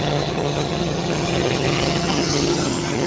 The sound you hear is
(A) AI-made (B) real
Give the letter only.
A